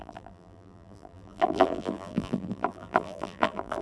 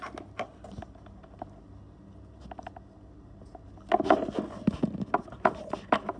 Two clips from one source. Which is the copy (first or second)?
first